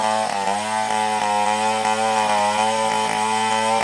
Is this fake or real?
real